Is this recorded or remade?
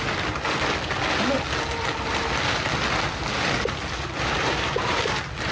recorded